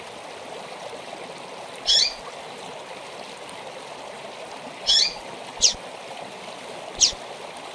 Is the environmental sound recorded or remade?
recorded